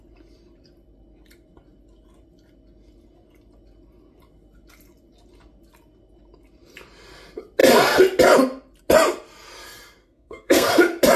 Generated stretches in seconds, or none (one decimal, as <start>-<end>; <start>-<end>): 10.0-10.7